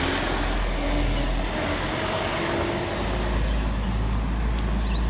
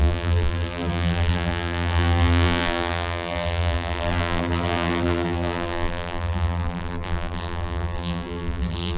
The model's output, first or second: second